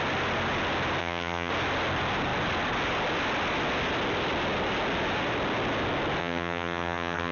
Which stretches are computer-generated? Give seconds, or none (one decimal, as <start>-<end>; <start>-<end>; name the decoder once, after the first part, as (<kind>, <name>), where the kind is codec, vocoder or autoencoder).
1.0-1.5 (vocoder, HiFi-GAN); 6.2-7.3